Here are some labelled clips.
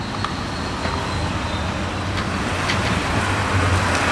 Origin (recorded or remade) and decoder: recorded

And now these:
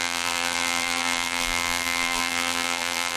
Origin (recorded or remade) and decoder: remade, vocoder, BigVGAN v2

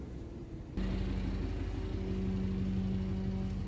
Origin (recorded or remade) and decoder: recorded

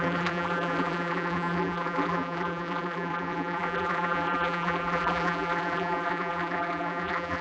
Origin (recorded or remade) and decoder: remade, vocoder, BigVGAN v2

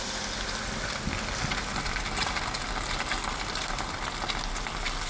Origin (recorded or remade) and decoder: recorded